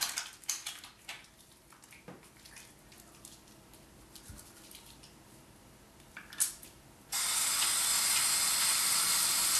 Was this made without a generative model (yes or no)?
yes